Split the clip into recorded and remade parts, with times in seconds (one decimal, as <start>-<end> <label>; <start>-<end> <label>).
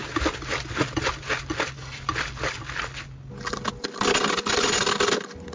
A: 0.0-5.5 recorded